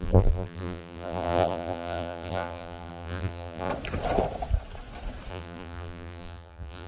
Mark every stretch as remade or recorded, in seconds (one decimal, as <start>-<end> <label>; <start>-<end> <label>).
0.0-3.7 remade; 3.7-5.3 recorded; 5.3-6.9 remade